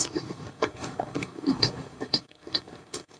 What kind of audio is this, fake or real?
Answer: fake